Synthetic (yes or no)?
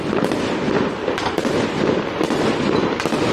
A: no